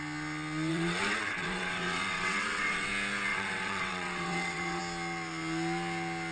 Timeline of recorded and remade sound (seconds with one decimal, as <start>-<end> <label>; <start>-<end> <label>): 0.0-0.7 recorded; 0.7-2.9 remade; 2.9-3.3 recorded; 3.3-4.8 remade; 4.8-6.3 recorded